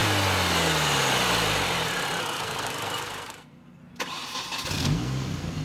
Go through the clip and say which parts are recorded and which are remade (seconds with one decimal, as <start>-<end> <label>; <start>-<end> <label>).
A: 0.0-2.2 recorded; 2.2-3.8 remade; 3.8-4.7 recorded; 4.7-5.6 remade